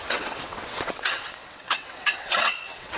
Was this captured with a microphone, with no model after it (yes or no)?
no